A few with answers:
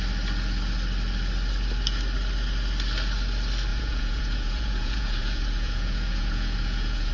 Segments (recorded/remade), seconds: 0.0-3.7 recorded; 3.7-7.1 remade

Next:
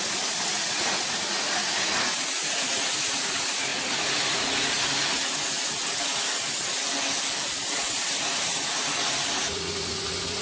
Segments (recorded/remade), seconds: 0.0-6.8 remade; 6.8-7.5 recorded; 7.5-10.4 remade

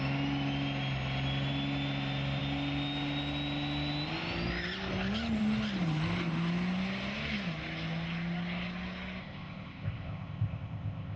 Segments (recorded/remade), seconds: 0.0-9.2 recorded; 9.2-11.2 remade

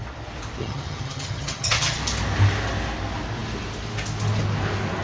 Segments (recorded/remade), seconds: 0.0-0.6 recorded; 0.6-2.0 remade; 2.0-5.0 recorded

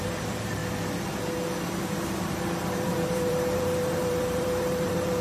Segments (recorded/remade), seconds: 0.0-0.6 remade; 0.6-2.0 recorded; 2.0-5.2 remade

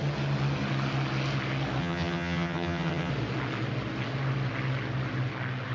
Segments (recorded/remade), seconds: 0.0-1.8 recorded; 1.8-3.1 remade; 3.1-5.7 recorded